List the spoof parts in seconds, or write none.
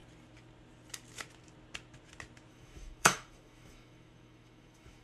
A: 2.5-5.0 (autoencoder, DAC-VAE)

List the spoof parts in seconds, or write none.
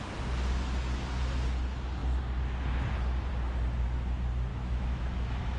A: 4.5-5.6 (autoencoder, DAC-VAE)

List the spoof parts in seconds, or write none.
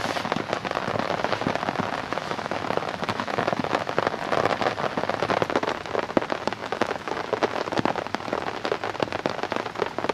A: 2.2-3.9 (autoencoder, DAC-VAE); 6.6-7.1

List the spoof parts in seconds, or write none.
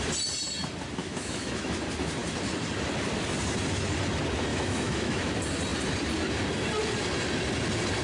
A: 1.0-1.7 (autoencoder, DAC-VAE); 4.5-5.3